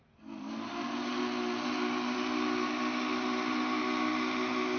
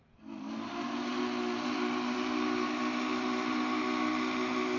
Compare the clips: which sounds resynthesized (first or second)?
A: second